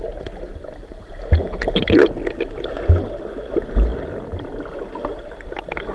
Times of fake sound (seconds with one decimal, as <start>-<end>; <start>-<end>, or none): none